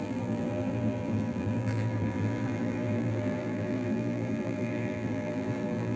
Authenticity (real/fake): fake